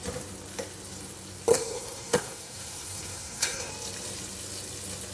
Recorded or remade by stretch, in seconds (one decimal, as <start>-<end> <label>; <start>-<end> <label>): 0.0-1.5 recorded; 1.5-3.7 remade; 3.7-5.1 recorded